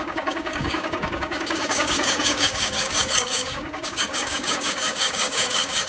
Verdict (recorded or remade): remade